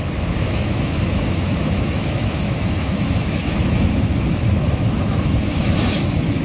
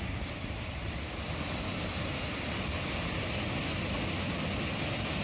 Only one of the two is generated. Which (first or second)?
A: first